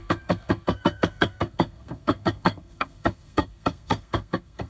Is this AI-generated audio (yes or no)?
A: yes